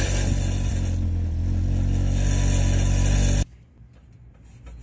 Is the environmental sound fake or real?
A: real